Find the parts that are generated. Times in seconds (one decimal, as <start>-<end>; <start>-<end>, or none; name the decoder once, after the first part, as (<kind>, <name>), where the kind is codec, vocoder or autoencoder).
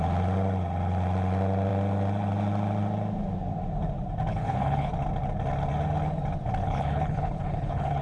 4.3-4.9 (codec, HILCodec); 6.6-8.0